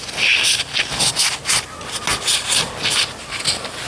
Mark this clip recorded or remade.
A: recorded